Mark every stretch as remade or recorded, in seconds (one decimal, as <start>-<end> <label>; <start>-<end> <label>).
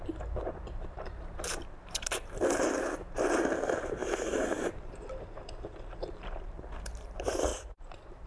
0.0-8.3 remade